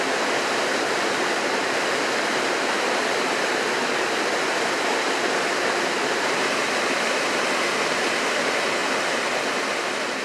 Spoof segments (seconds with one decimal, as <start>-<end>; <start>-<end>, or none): none